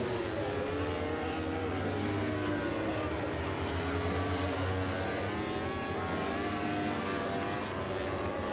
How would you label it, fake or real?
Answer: real